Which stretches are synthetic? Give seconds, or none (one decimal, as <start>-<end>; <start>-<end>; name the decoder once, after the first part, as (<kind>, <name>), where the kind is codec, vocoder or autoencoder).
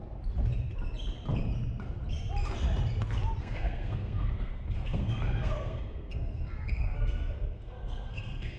3.4-8.6 (codec, SNAC)